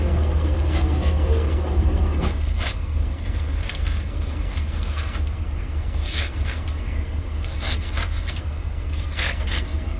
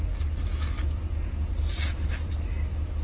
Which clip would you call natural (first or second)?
second